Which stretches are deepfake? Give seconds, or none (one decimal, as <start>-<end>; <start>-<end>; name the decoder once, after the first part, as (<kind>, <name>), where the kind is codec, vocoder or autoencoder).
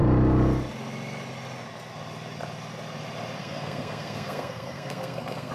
3.4-5.5 (codec, SNAC)